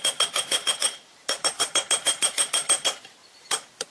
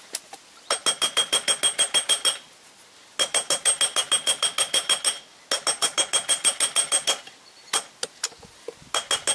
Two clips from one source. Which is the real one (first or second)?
second